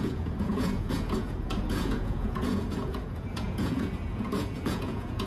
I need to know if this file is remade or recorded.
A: remade